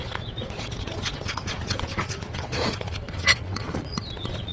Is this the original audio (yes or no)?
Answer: no